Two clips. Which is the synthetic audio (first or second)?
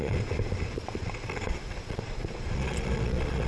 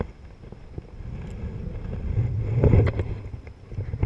first